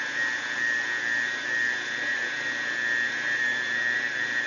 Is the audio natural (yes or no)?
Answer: yes